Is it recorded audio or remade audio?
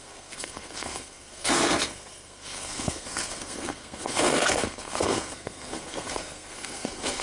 remade